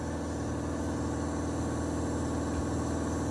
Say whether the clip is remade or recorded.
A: recorded